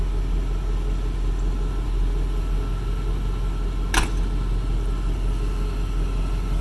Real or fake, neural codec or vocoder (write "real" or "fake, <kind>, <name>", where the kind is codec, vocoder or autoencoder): real